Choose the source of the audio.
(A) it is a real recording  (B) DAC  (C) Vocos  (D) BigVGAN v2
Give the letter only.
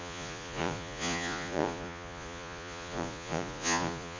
C